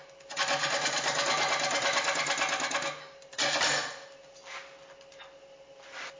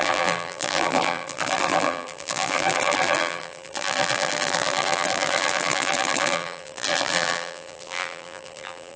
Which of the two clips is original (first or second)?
first